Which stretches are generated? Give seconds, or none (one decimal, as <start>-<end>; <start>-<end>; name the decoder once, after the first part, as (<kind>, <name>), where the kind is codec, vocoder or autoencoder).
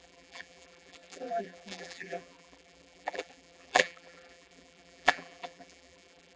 0.0-6.4 (vocoder, BigVGAN v2)